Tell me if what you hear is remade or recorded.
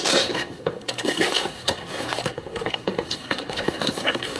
remade